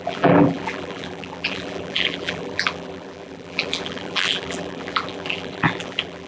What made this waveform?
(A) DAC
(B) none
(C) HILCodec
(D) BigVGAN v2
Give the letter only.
D